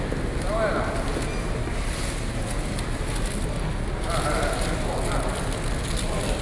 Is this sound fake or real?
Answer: real